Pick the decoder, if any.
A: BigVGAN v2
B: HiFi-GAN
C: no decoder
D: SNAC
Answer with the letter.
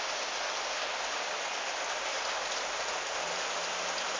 C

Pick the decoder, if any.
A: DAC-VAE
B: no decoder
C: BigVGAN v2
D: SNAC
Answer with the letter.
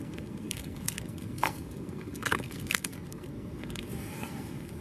D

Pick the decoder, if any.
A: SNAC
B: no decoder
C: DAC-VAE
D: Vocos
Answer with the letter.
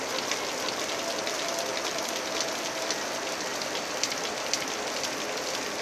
B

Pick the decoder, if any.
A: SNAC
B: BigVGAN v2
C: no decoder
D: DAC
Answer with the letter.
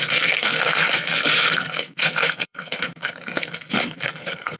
A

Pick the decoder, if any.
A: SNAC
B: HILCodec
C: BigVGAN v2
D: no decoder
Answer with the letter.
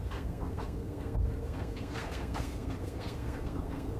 A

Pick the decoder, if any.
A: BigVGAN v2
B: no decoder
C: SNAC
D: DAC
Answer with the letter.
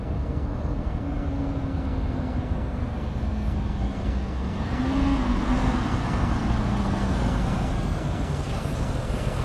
C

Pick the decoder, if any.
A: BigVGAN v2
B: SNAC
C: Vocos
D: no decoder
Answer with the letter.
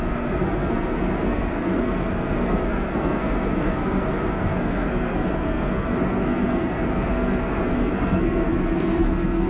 B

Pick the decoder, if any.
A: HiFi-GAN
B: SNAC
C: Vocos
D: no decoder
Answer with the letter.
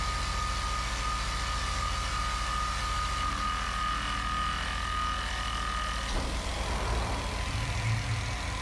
D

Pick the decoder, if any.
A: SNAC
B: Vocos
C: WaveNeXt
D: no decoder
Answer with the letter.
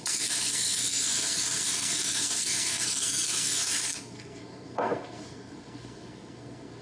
A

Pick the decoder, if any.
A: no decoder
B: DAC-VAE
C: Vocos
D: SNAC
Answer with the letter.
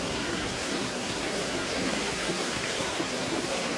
D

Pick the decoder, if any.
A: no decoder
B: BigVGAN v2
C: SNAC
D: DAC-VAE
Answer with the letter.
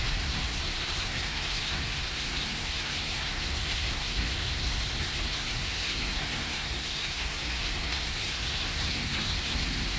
C